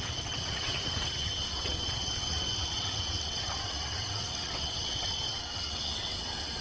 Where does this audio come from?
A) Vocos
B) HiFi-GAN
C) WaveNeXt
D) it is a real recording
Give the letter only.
C